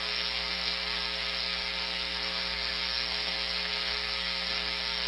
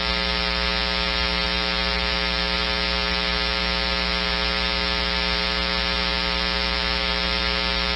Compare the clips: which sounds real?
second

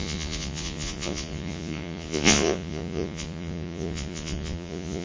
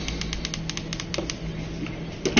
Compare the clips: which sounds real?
second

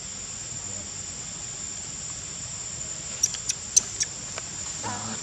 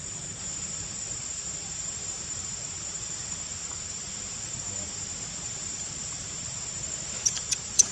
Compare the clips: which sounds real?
first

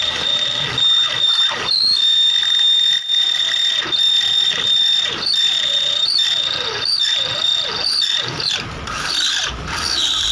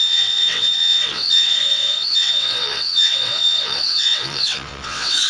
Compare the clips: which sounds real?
first